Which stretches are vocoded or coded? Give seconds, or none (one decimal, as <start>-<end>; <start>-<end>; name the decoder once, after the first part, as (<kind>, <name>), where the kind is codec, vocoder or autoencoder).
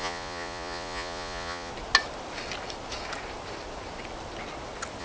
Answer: 0.0-1.7 (vocoder, Vocos)